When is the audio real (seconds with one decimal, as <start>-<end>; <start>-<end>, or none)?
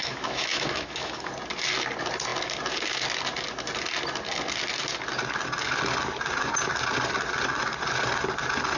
1.3-8.8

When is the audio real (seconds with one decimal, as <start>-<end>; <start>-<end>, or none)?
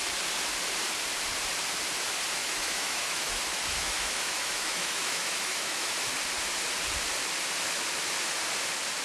0.0-2.4; 6.0-9.0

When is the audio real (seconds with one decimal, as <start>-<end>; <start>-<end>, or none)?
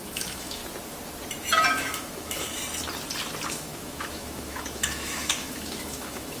0.6-1.7; 2.6-3.5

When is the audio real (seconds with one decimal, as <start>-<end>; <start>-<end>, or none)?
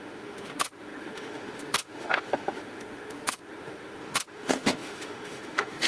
none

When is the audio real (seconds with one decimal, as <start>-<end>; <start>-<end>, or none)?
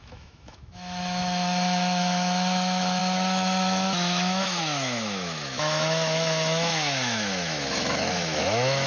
none